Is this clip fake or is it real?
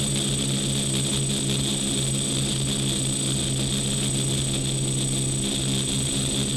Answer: real